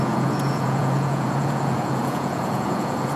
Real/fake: fake